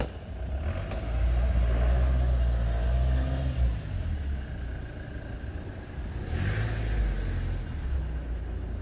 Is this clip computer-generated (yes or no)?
no